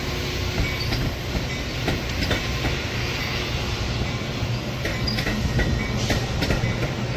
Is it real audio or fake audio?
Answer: real